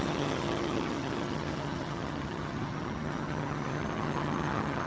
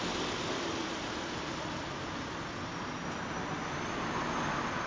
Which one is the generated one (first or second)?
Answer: first